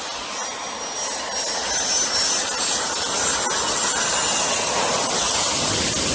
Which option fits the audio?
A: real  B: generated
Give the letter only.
A